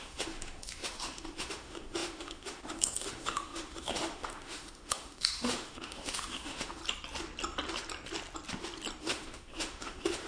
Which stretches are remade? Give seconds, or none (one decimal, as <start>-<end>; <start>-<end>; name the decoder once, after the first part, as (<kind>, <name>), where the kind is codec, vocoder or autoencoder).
0.0-6.8 (autoencoder, DAC-VAE); 9.0-10.3